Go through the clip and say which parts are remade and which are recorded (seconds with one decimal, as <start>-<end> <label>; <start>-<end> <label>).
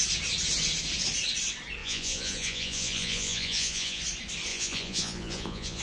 0.0-1.8 recorded; 1.8-4.0 remade; 4.0-4.5 recorded; 4.5-5.8 remade